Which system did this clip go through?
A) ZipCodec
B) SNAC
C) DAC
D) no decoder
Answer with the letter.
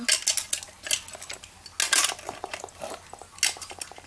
D